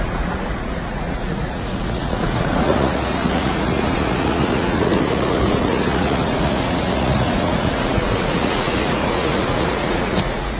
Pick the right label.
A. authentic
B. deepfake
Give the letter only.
B